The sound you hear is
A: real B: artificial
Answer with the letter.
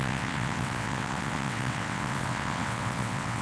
B